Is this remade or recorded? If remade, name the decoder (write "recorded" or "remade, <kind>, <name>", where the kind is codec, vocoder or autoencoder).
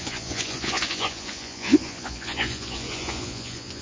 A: remade, vocoder, Vocos